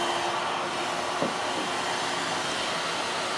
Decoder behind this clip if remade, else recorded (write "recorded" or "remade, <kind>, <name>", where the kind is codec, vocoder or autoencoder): recorded